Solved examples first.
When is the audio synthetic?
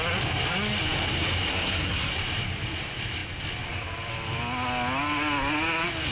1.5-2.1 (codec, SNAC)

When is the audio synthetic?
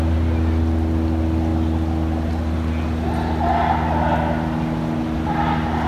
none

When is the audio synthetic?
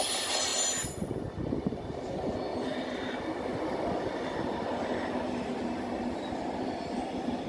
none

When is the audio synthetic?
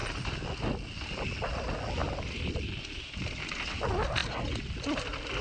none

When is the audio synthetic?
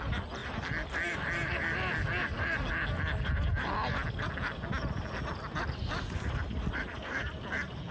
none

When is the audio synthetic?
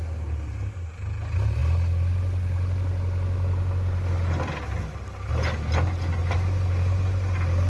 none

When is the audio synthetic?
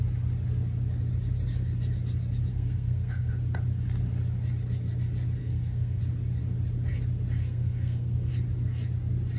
2.5-3.3 (codec, SNAC); 5.4-6.0; 7.4-8.3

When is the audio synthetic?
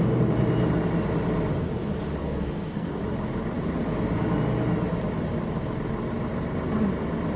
2.2-3.0 (codec, SNAC)